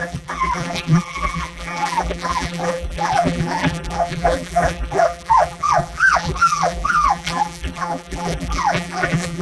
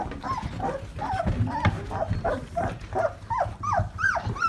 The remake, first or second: first